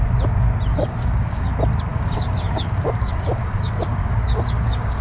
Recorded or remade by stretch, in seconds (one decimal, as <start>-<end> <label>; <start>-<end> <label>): 0.0-0.7 recorded; 0.7-1.5 remade; 1.5-1.9 recorded; 1.9-5.0 remade